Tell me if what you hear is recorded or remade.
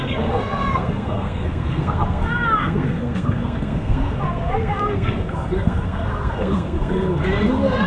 remade